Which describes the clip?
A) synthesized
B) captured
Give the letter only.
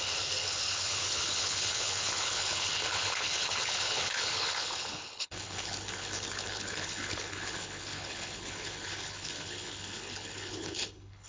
A